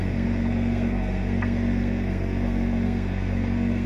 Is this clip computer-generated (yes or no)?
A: yes